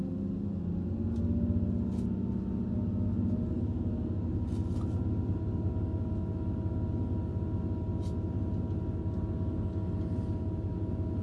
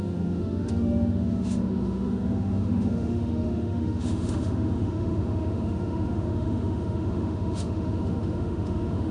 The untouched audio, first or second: first